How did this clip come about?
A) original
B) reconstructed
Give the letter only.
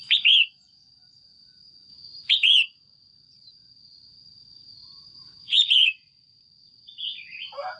B